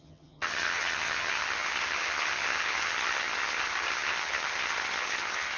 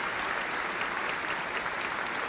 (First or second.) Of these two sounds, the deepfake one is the first